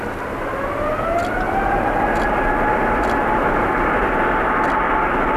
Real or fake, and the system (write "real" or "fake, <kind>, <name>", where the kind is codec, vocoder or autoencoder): real